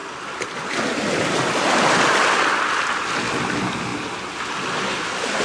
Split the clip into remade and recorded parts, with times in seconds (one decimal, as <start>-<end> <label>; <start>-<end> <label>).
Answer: 0.0-5.4 recorded